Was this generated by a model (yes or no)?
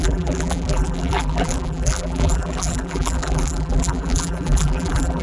yes